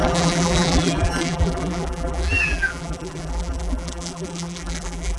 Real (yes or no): no